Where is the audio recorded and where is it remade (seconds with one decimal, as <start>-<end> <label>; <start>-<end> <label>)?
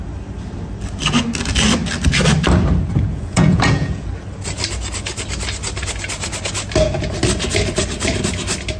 0.0-3.1 recorded; 3.1-4.1 remade; 4.1-8.8 recorded